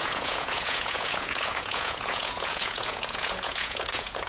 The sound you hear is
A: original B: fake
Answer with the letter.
B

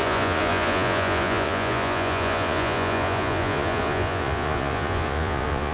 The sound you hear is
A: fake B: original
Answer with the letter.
A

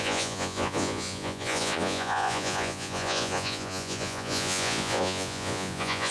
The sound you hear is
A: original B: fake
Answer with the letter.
B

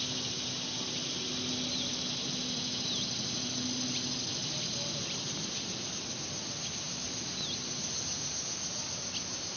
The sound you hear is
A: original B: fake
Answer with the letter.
A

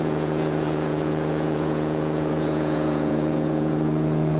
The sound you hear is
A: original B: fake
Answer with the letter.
B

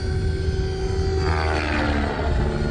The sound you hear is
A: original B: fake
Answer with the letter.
A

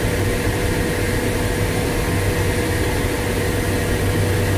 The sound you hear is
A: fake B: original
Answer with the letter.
B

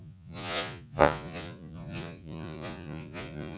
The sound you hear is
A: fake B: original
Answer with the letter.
A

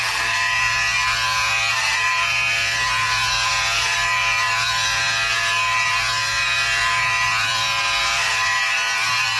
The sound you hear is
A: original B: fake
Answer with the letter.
B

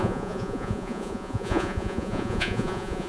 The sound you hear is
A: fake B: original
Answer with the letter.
A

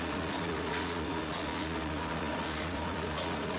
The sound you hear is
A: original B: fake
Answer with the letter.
B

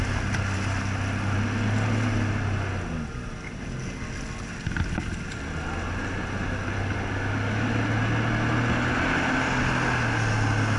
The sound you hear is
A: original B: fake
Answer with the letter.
A